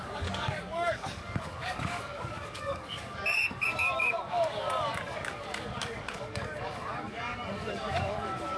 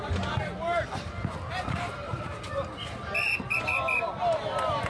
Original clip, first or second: second